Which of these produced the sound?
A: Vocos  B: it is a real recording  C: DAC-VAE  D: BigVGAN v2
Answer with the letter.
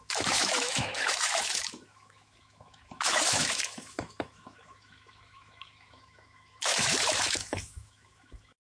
C